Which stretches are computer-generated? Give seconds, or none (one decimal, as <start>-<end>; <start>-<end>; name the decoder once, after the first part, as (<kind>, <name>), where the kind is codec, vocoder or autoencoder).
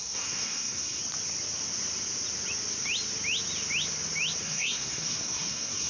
0.0-1.0 (codec, SNAC); 4.4-5.9